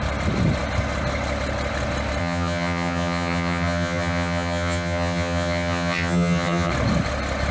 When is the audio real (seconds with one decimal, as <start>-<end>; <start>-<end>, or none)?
0.0-2.2; 6.7-7.5